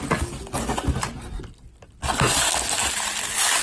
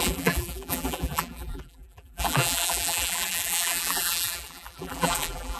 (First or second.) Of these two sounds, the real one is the first